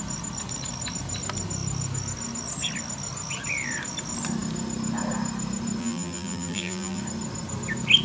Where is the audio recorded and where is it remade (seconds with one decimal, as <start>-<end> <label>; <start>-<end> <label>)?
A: 0.0-5.8 recorded; 5.8-7.0 remade; 7.0-8.0 recorded